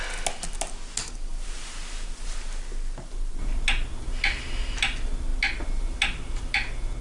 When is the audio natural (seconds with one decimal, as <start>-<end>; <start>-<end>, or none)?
0.0-7.0